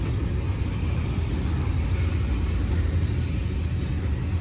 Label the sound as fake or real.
real